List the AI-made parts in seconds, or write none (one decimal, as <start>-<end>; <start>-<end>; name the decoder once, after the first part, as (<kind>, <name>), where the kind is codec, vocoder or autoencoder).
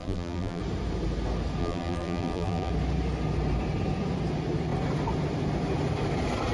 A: 0.0-0.6 (vocoder, BigVGAN v2); 1.6-2.7